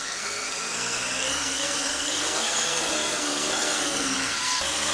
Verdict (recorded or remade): remade